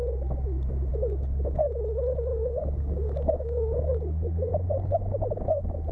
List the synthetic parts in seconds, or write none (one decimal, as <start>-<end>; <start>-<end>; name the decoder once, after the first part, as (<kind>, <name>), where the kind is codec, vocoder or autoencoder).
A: 0.9-1.7 (codec, DAC); 2.3-4.5